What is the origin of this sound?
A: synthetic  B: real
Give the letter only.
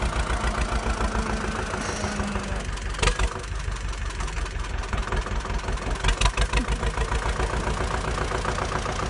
B